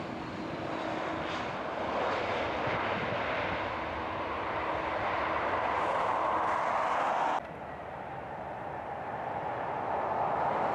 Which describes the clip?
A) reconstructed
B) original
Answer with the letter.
B